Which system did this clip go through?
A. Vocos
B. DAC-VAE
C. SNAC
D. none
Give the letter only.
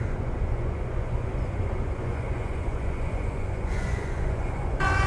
A